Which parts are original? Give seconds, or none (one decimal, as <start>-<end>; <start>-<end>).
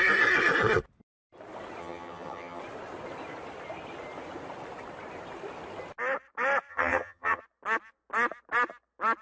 0.0-1.8; 2.6-6.7; 7.4-9.2